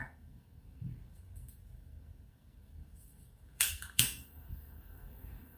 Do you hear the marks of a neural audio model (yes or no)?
yes